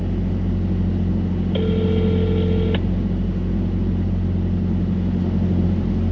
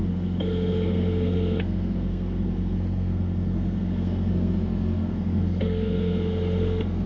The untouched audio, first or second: first